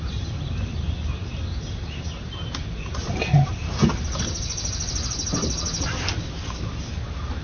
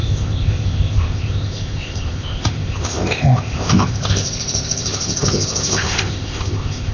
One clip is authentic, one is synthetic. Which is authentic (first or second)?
first